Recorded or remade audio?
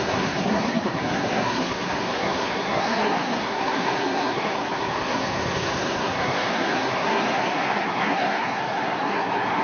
remade